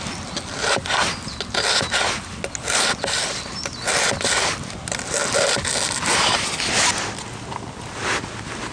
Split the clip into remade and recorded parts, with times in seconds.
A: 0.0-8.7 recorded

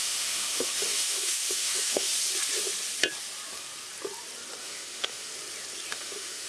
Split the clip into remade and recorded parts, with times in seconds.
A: 0.0-2.1 remade; 2.1-4.6 recorded; 4.6-5.3 remade; 5.3-5.9 recorded; 5.9-6.5 remade

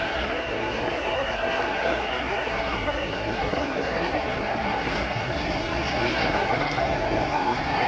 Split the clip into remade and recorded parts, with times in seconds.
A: 0.0-7.9 remade

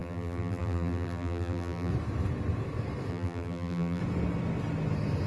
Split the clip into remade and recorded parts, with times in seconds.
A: 0.0-1.9 remade; 1.9-3.1 recorded; 3.1-4.0 remade; 4.0-5.3 recorded

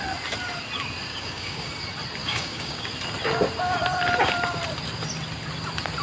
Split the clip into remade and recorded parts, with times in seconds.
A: 0.0-1.1 recorded; 1.1-1.7 remade; 1.7-2.2 recorded; 2.2-2.9 remade; 2.9-6.0 recorded

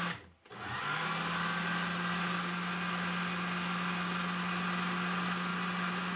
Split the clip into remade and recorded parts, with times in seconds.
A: 0.0-6.2 recorded

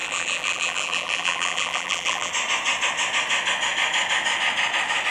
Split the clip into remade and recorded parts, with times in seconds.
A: 0.0-2.3 remade; 2.3-5.1 recorded

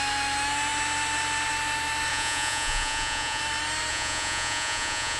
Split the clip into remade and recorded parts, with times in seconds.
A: 0.0-2.1 recorded; 2.1-3.4 remade; 3.4-3.9 recorded; 3.9-5.2 remade